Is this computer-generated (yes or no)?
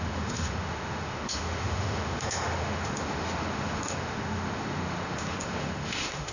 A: yes